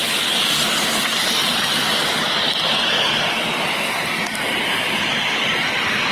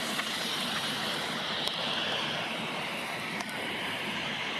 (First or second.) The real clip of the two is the first